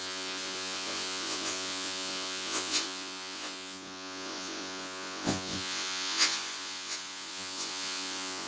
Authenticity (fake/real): fake